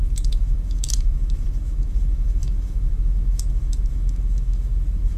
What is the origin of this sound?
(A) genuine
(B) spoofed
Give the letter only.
B